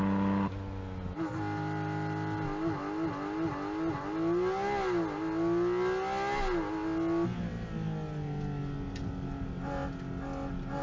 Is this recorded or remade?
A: recorded